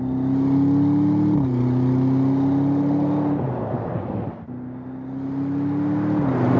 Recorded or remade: recorded